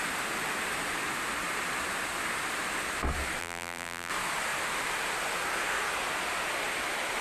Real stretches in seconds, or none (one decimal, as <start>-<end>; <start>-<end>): 0.0-3.4; 4.1-7.2